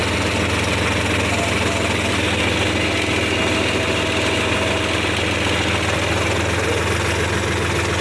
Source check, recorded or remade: recorded